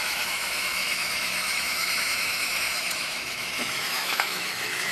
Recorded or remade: remade